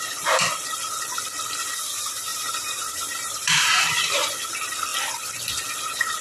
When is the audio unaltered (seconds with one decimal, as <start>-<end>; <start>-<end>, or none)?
0.0-2.3; 4.3-6.2